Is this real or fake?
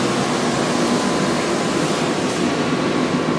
real